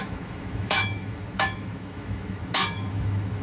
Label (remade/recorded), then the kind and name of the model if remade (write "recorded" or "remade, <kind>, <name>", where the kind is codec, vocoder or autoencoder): remade, autoencoder, DAC-VAE